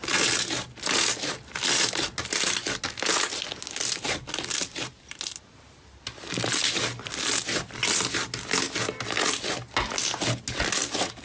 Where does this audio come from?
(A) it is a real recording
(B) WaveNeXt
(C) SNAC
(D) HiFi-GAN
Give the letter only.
A